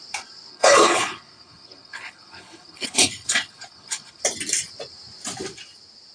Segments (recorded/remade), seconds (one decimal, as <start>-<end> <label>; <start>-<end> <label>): 0.0-0.5 recorded; 0.5-4.2 remade; 4.2-6.1 recorded